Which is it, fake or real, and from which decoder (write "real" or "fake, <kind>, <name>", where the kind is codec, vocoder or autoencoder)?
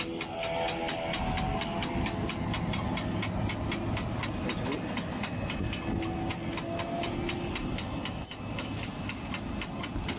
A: real